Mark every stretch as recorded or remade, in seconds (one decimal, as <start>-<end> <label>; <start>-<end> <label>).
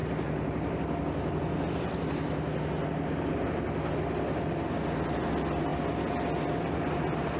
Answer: 0.0-7.4 recorded